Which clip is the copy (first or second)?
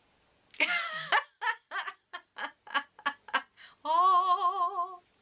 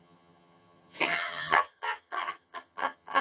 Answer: second